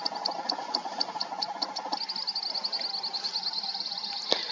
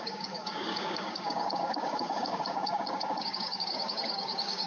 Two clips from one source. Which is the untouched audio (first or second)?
first